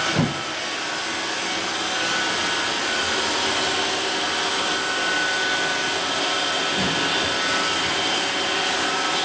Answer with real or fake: real